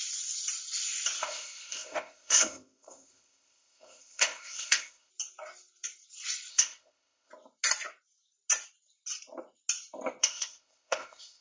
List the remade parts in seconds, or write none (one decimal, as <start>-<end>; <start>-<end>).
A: 1.2-5.1; 6.5-7.3; 10.2-11.4